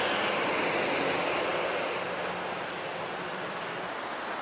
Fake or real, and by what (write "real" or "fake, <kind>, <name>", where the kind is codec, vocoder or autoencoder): real